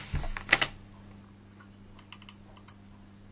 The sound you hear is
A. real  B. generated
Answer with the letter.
A